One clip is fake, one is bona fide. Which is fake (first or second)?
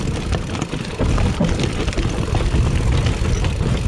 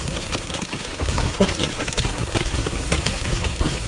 second